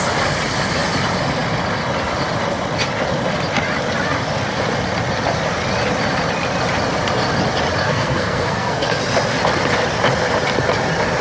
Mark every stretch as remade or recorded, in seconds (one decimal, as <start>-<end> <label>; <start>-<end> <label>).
0.0-7.8 recorded; 7.8-9.0 remade; 9.0-11.2 recorded